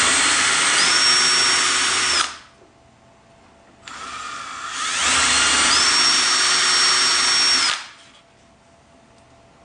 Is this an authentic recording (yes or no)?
yes